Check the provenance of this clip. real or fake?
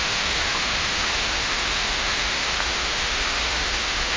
fake